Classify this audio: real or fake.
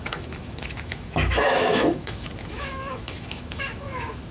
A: fake